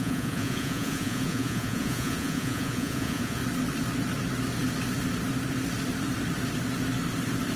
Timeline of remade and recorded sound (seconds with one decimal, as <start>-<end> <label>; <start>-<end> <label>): 0.0-3.4 remade; 3.4-7.6 recorded